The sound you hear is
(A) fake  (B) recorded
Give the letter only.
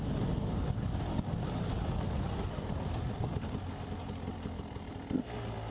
B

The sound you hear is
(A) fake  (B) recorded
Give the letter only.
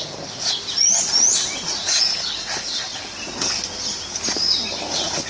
B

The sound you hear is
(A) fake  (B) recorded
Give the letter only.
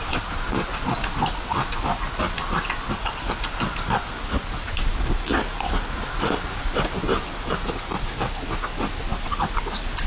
B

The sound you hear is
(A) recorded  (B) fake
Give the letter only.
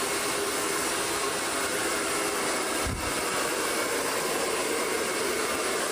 A